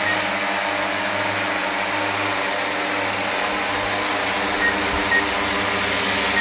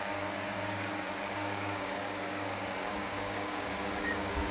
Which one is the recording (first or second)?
first